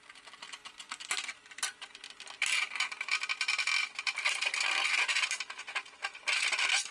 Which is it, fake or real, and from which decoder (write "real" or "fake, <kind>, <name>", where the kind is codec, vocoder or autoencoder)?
real